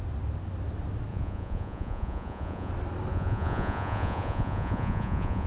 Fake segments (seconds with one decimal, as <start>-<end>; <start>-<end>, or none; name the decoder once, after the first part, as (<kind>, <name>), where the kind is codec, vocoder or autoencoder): 1.1-2.7 (vocoder, Vocos); 3.1-5.5